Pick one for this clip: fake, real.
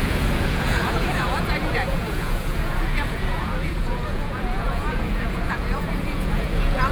fake